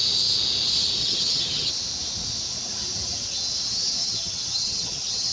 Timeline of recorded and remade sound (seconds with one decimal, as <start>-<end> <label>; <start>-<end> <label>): 0.0-1.0 recorded; 1.0-1.7 remade; 1.7-4.0 recorded; 4.0-5.3 remade